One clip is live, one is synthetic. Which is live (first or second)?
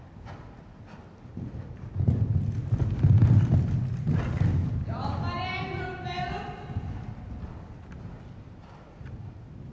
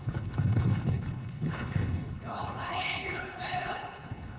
first